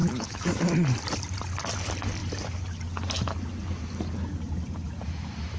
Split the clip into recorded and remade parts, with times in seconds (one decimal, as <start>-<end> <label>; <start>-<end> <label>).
0.0-0.7 remade; 0.7-5.6 recorded